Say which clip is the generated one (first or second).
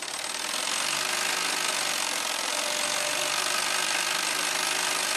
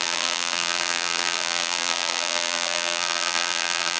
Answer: second